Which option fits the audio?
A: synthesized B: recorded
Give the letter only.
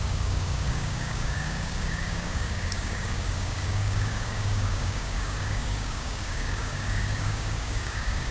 A